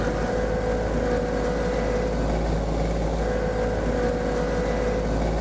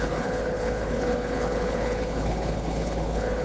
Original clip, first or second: first